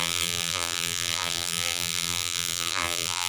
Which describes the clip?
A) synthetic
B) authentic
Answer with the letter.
A